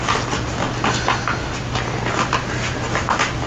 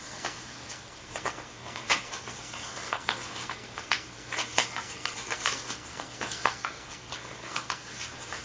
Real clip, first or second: first